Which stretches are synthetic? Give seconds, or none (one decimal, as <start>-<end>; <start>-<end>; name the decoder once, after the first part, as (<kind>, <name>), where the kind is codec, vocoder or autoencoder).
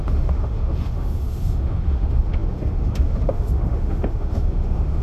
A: 0.0-5.0 (autoencoder, DAC-VAE)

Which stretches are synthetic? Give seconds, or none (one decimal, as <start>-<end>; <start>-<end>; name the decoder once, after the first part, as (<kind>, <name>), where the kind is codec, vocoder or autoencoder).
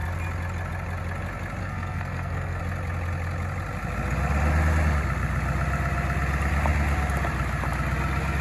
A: 1.6-2.6 (codec, SNAC)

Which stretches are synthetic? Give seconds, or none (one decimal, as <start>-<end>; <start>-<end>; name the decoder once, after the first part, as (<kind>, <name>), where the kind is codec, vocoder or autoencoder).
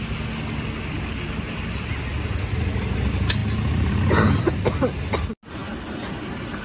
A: none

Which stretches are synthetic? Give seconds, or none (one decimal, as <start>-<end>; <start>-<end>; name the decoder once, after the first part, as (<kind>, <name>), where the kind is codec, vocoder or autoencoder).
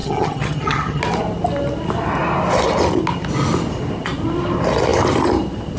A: 0.0-1.0 (vocoder, HiFi-GAN)